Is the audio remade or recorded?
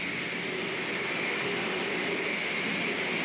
recorded